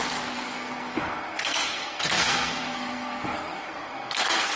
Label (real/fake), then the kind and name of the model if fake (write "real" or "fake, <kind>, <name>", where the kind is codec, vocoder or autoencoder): fake, codec, SNAC